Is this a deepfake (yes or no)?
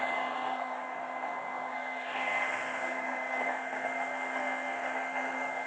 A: yes